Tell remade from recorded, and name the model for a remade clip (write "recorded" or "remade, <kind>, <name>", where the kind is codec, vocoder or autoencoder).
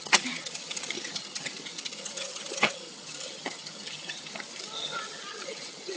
remade, vocoder, HiFi-GAN